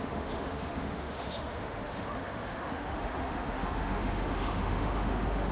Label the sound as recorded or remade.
remade